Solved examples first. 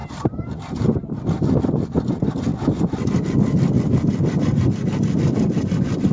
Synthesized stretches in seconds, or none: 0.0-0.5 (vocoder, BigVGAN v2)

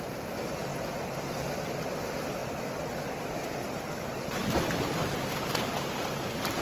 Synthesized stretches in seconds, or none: 0.0-0.7 (vocoder, BigVGAN v2); 1.7-2.4; 3.3-4.4; 5.1-6.6

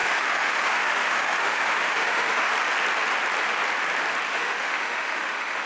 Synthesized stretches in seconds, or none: 0.0-2.5 (autoencoder, DAC-VAE); 4.3-5.7

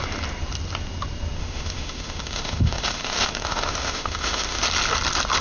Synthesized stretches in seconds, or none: 1.4-4.6 (autoencoder, DAC-VAE)

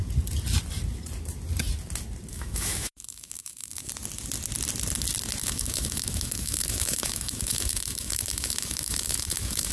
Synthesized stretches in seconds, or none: 2.3-3.9 (autoencoder, DAC-VAE); 5.4-9.7

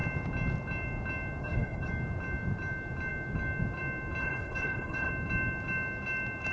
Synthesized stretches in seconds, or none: 1.4-1.9 (codec, HILCodec); 4.2-5.1

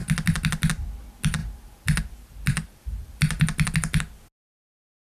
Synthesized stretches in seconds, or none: 0.0-0.7 (vocoder, BigVGAN v2); 1.4-4.0

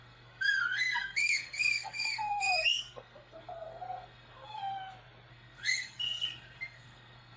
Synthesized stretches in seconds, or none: 0.0-4.7 (codec, SNAC); 5.3-7.4